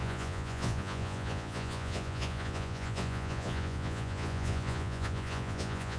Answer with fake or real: fake